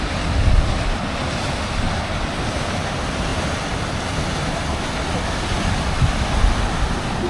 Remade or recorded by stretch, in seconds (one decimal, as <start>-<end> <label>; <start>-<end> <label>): 0.0-3.3 recorded; 3.3-4.8 remade; 4.8-7.3 recorded